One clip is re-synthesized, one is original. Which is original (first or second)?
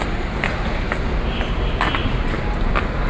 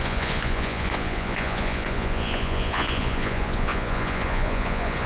first